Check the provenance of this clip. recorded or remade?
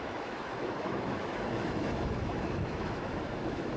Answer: remade